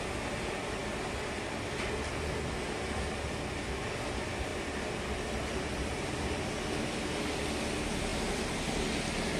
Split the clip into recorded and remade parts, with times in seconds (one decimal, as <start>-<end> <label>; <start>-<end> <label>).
0.0-9.4 recorded